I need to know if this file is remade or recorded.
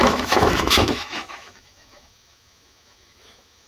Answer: remade